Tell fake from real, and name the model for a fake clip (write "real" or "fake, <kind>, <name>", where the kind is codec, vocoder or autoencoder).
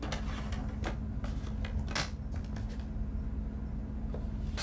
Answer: real